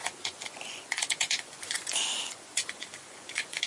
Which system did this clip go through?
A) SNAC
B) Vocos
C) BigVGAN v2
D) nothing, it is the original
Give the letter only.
B